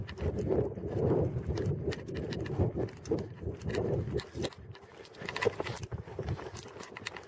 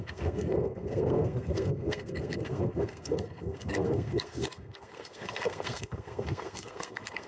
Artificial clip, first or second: second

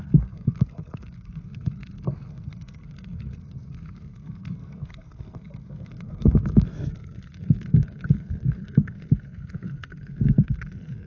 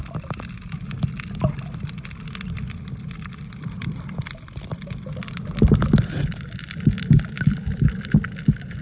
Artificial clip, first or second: first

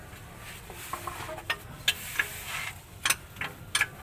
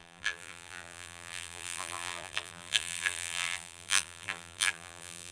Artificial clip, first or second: second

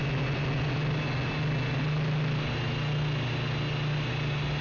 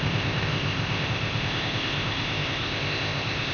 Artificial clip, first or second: second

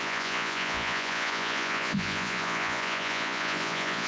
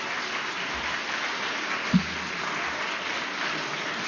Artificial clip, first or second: first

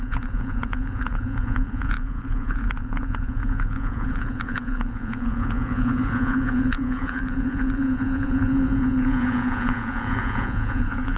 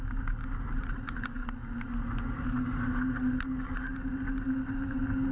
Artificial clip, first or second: first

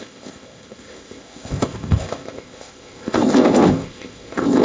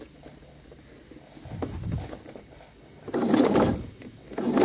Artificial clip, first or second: first